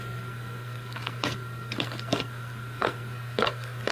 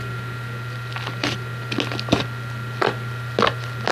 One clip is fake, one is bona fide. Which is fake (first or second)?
first